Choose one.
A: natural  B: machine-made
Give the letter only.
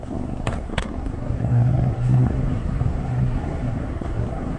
B